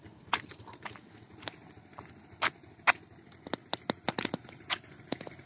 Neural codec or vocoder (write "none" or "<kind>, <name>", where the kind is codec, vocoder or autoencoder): none